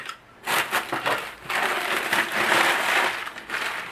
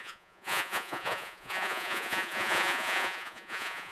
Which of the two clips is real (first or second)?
first